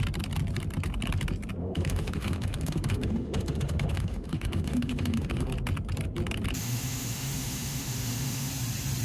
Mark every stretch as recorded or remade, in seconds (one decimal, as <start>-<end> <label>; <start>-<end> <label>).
0.0-1.6 recorded; 1.6-5.5 remade; 5.5-6.6 recorded; 6.6-8.5 remade; 8.5-9.0 recorded